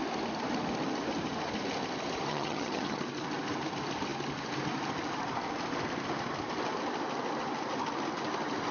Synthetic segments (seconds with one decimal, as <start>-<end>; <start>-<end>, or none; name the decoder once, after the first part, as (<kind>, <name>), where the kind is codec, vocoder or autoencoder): 2.3-3.0 (vocoder, HiFi-GAN)